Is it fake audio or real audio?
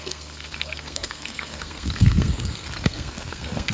fake